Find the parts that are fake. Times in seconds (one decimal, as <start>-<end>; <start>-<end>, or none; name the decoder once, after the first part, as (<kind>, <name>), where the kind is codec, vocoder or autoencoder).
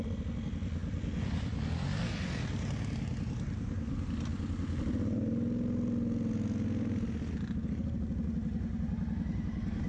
none